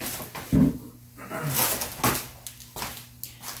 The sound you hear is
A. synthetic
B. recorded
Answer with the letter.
B